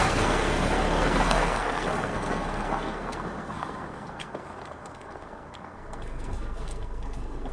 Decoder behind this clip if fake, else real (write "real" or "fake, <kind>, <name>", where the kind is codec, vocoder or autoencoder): fake, codec, SNAC